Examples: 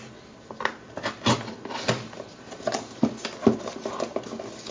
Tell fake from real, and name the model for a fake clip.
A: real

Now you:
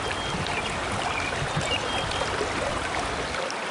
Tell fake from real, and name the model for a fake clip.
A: real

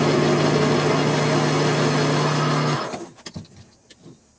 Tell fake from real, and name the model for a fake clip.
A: real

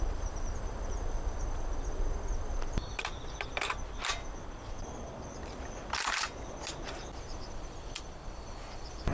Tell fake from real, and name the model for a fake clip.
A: fake, vocoder, BigVGAN v2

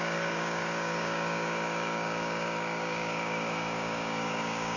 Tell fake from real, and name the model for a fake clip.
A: fake, codec, DAC